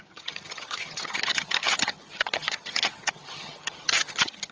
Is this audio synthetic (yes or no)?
yes